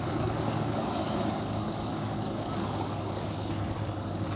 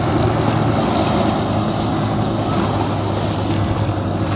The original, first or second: second